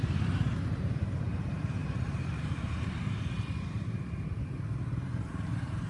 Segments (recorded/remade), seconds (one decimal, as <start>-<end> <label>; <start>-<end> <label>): 0.0-5.9 remade